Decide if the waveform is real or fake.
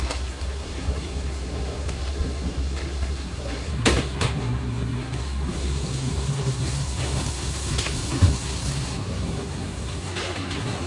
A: fake